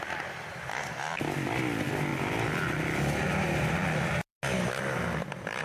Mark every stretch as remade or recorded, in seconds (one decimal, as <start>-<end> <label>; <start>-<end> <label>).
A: 0.0-5.6 recorded